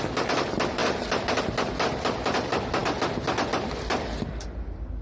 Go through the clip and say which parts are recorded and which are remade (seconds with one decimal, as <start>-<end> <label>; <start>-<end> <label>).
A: 0.0-5.0 recorded